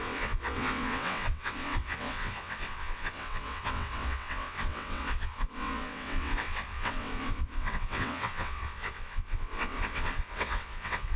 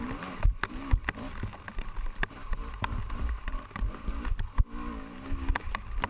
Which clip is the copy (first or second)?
first